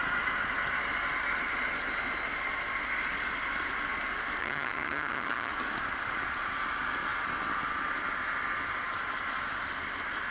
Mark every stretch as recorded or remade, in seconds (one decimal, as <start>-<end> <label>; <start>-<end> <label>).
0.0-4.4 recorded; 4.4-5.5 remade; 5.5-10.3 recorded